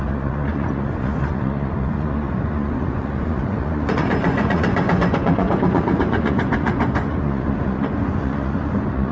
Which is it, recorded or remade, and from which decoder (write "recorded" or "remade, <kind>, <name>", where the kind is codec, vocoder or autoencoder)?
remade, vocoder, Vocos